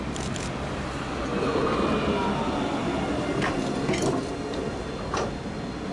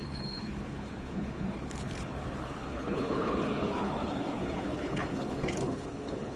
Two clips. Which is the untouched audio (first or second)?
first